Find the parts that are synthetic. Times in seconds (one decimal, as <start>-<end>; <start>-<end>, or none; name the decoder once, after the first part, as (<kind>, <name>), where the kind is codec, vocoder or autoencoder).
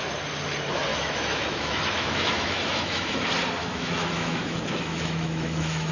0.9-3.2 (autoencoder, DAC-VAE); 3.6-5.9